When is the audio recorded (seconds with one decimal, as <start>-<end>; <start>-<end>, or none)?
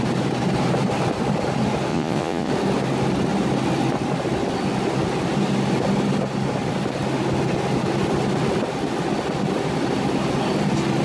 0.0-1.9; 2.5-11.0